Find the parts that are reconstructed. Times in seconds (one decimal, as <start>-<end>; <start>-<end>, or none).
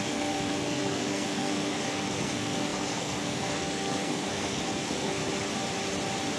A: 0.0-5.2